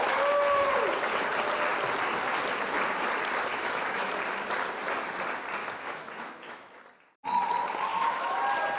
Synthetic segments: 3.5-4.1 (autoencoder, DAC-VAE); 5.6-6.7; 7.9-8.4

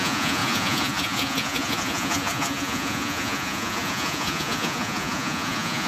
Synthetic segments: 0.0-5.9 (vocoder, Vocos)

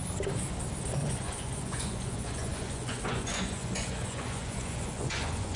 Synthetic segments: 1.0-5.6 (vocoder, Vocos)

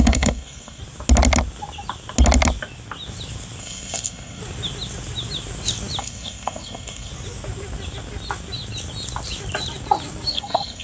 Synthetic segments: 0.0-0.8 (codec, SNAC); 3.6-4.4; 6.0-7.1; 10.3-10.8